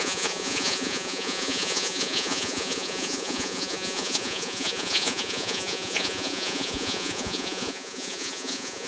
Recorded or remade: remade